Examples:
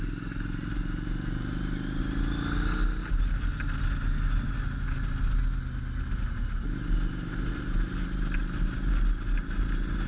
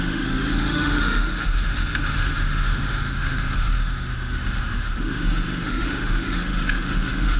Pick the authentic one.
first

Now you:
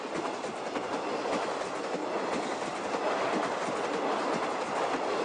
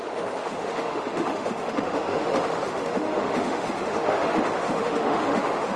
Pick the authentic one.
first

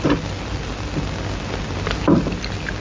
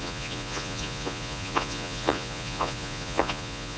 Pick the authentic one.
first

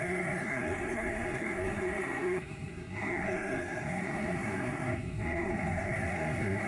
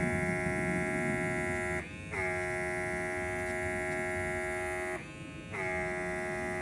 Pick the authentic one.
second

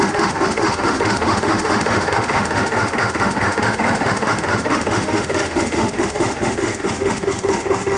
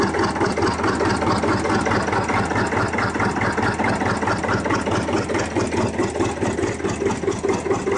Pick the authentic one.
second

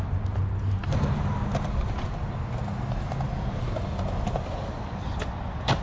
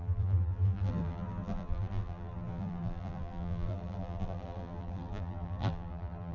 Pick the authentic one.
first